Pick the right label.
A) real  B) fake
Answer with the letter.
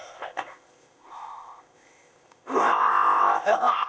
B